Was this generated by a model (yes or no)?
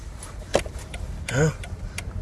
no